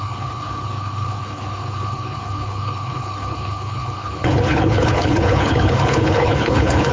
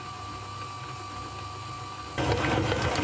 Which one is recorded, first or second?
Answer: second